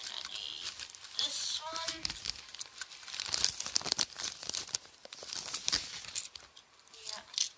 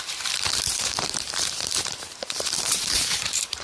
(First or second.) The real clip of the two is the first